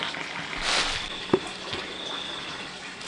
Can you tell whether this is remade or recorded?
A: recorded